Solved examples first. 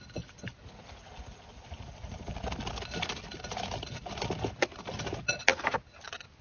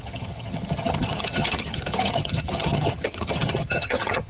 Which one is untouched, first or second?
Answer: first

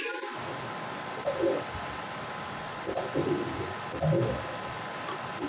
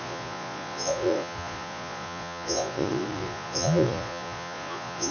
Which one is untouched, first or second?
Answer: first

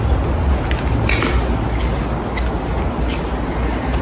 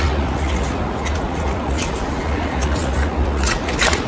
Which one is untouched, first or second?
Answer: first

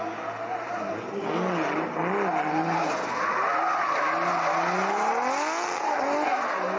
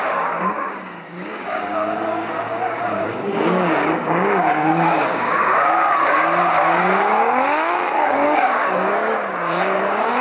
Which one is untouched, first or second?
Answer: first